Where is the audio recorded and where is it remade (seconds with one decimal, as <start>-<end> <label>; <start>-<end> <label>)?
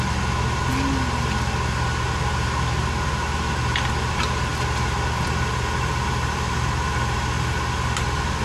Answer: 0.0-8.4 recorded